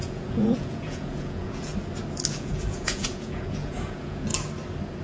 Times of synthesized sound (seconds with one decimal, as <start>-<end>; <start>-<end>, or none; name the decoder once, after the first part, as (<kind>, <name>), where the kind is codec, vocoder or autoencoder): 0.0-1.7 (vocoder, Vocos); 2.3-4.3